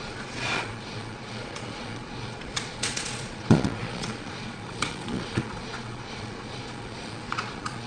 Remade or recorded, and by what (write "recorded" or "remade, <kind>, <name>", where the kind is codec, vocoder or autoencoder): remade, vocoder, Vocos